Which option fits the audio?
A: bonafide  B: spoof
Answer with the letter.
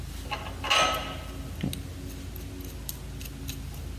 A